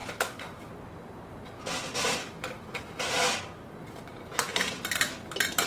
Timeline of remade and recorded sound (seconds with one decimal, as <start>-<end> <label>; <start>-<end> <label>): 0.0-0.7 remade; 0.7-2.2 recorded; 2.2-2.8 remade; 2.8-5.7 recorded